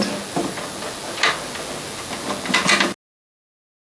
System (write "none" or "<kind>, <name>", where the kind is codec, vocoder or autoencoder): none